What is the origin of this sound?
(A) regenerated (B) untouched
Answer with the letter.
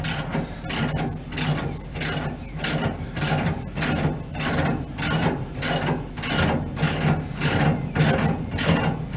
B